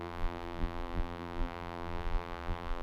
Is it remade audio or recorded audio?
remade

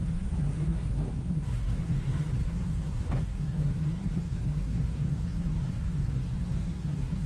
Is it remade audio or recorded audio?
remade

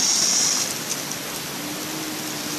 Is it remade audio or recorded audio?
recorded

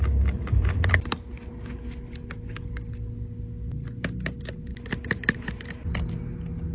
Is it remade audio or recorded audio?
recorded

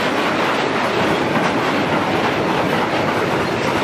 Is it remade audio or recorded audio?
remade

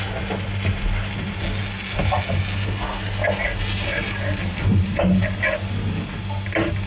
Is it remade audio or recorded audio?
recorded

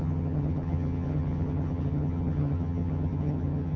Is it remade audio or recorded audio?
remade